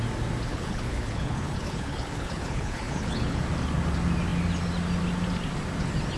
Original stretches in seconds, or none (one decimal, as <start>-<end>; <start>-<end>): 0.0-0.5; 3.4-6.2